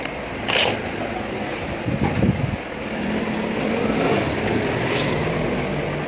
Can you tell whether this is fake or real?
real